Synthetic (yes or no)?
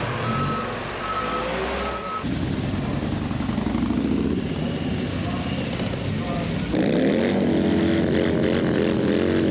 no